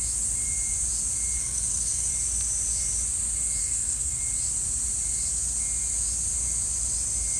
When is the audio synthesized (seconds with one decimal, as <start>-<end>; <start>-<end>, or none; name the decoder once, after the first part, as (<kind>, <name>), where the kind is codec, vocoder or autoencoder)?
1.4-2.1 (codec, SNAC); 3.6-4.2